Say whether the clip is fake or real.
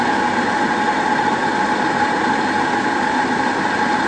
real